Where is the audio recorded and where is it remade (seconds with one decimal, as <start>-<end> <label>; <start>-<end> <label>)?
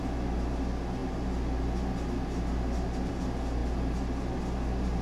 0.0-5.0 recorded